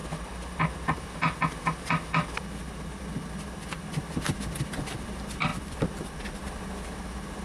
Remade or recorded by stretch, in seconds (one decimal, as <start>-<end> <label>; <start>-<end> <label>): 0.0-7.4 recorded